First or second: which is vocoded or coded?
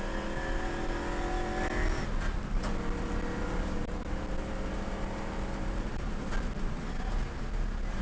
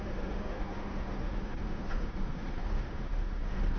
second